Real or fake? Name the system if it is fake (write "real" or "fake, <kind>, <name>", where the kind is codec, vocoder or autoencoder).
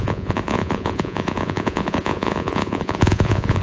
fake, vocoder, Vocos